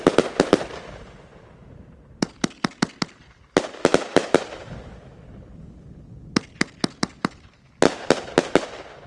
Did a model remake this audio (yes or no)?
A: no